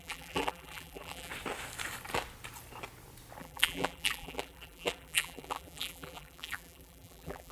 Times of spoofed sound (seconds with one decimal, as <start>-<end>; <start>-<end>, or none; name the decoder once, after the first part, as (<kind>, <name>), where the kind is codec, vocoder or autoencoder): 0.0-1.3 (vocoder, BigVGAN v2); 3.4-7.5